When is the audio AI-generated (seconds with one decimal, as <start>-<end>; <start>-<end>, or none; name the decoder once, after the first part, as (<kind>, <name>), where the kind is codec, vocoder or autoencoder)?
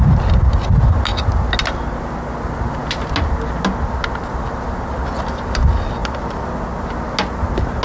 none